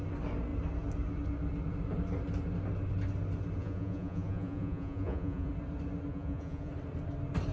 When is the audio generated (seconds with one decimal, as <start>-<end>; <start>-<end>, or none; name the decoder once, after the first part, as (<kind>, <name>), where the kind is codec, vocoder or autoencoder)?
3.6-5.5 (vocoder, Vocos); 6.1-6.7